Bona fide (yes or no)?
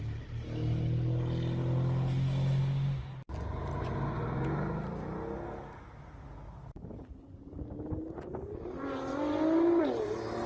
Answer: yes